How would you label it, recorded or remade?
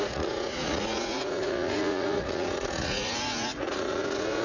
remade